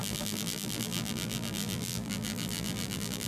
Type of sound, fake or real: fake